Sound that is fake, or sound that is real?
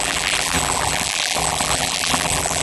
fake